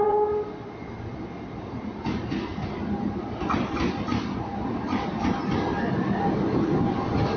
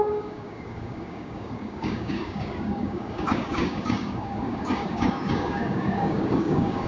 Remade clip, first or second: second